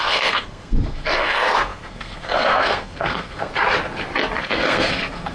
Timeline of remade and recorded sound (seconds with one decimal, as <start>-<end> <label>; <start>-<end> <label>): 0.0-3.5 remade; 3.5-4.4 recorded; 4.4-5.3 remade